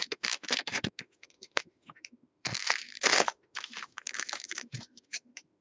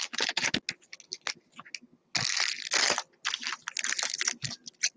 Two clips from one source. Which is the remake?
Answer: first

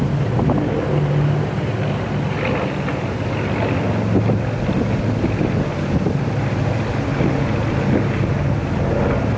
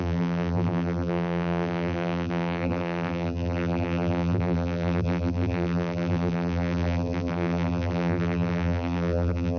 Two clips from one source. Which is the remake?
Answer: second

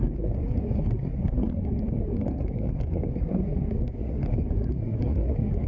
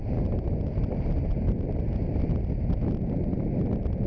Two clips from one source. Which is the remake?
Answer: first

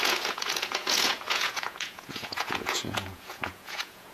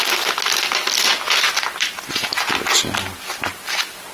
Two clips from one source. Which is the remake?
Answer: first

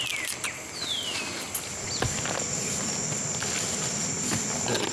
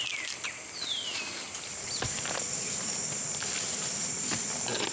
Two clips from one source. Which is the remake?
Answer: second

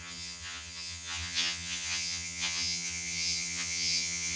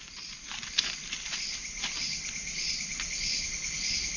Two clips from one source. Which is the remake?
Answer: first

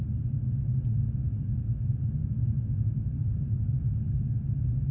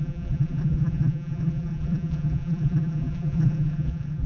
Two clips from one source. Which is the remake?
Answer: second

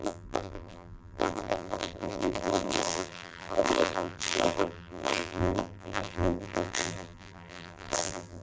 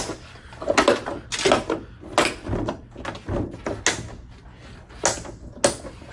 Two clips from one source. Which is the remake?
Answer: first